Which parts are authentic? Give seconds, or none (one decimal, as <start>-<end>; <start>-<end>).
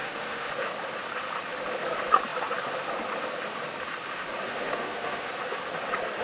0.5-4.5; 5.3-6.2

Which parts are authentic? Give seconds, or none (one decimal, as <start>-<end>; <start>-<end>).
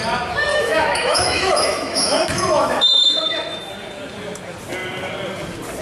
0.0-0.5; 3.7-5.8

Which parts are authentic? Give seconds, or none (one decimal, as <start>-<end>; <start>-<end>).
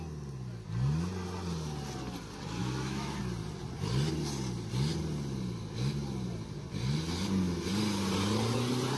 0.0-2.6; 3.2-9.0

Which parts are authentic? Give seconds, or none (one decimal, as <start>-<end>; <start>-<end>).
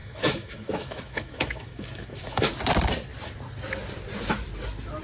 2.5-5.0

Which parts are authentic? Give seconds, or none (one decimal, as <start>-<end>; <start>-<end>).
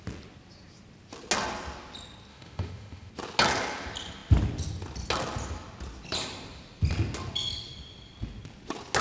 0.0-2.3; 3.1-9.0